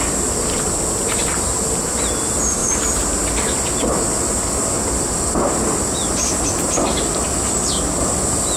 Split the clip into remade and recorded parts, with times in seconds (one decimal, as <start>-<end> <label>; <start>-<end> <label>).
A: 0.0-8.6 recorded